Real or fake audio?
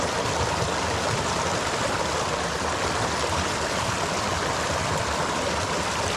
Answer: real